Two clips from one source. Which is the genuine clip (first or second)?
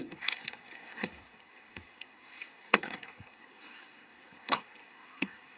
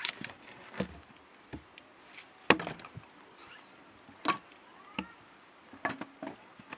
second